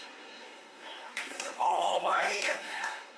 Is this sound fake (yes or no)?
yes